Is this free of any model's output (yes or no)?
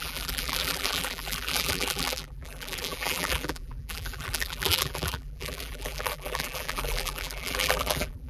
no